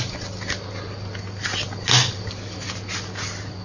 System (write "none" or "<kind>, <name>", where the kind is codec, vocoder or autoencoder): none